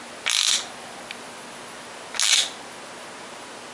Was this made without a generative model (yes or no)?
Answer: yes